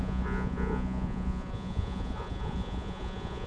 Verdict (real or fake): fake